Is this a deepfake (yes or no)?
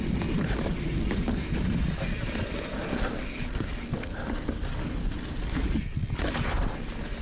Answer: no